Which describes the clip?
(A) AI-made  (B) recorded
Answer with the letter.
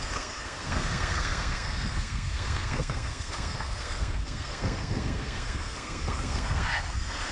A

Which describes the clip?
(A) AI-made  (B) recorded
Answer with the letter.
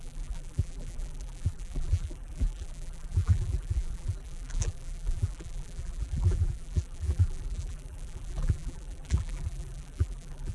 A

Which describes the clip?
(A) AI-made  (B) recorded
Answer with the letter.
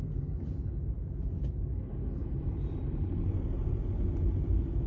B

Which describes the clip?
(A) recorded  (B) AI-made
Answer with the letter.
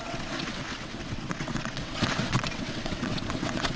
B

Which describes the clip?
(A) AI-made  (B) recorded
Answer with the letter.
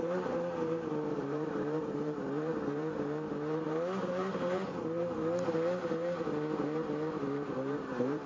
A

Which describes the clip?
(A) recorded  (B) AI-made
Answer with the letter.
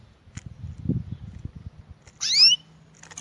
A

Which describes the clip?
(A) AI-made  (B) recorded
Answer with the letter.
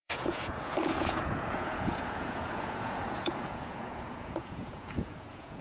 A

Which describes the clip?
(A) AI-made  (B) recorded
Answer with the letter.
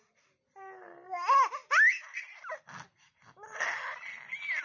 B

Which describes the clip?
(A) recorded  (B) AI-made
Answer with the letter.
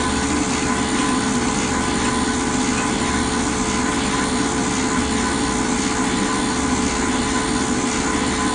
A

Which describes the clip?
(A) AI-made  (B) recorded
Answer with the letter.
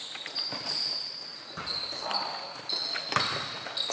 B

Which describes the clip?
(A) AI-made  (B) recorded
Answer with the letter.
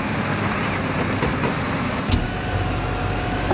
B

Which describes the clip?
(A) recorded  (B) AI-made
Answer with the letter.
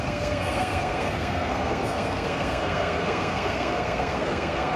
B